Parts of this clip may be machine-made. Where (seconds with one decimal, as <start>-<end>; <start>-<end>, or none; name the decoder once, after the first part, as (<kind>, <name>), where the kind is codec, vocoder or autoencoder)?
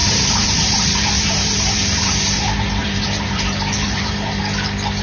0.0-2.4 (vocoder, BigVGAN v2); 2.8-4.4